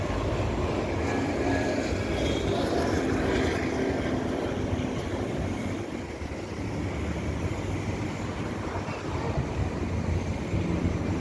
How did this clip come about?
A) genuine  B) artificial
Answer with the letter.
A